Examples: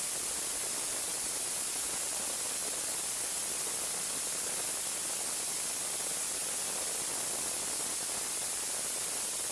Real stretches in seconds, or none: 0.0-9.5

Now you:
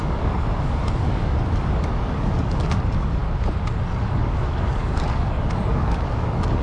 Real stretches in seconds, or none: 3.2-4.0

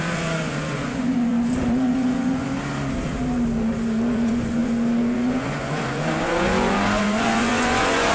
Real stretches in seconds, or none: 2.5-4.1

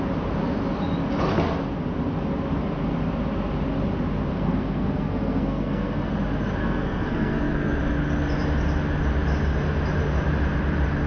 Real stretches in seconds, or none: 0.0-4.3; 6.1-6.6; 7.8-11.1

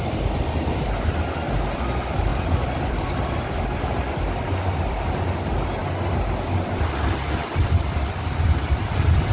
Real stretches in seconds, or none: 5.8-6.7

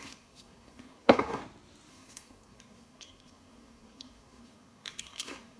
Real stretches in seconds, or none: 1.4-1.9

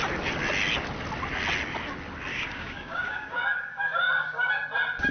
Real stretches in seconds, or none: 0.0-2.3; 4.6-5.1